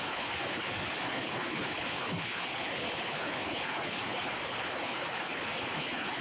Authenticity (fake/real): fake